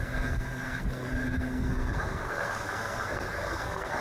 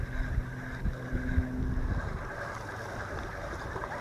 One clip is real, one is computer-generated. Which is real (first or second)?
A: second